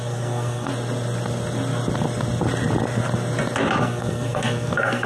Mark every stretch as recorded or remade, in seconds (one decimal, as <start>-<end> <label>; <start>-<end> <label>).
0.0-0.7 remade; 0.7-3.8 recorded; 3.8-5.1 remade